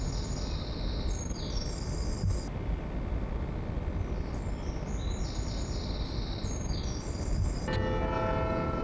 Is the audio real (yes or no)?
yes